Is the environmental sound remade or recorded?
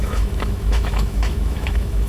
remade